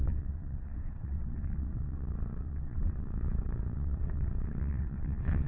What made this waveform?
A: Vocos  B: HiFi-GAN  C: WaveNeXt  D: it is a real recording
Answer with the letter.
C